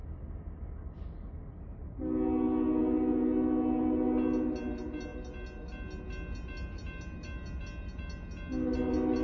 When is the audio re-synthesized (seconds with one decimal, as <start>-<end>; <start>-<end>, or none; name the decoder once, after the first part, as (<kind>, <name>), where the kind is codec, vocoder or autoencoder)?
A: none